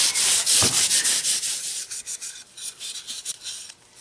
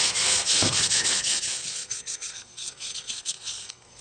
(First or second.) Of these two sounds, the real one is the first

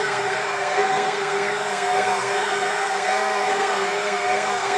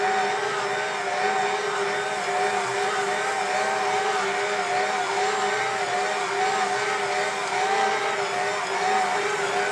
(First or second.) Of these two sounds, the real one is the second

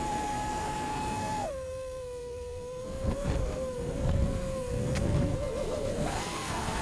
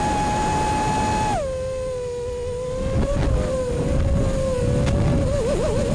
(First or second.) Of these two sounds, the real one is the second